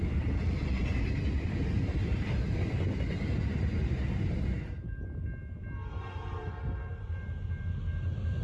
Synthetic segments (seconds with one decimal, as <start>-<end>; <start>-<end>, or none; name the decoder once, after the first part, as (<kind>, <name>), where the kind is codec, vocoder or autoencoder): none